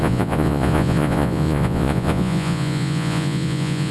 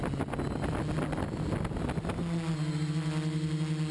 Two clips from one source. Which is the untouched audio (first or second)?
second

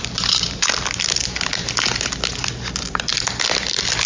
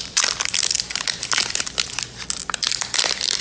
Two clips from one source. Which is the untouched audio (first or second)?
first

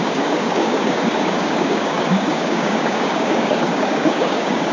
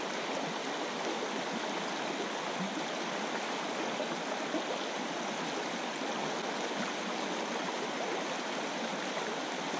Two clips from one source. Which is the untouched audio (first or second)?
second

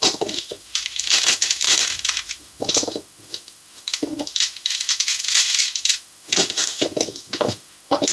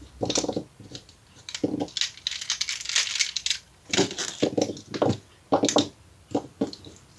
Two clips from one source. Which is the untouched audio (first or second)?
second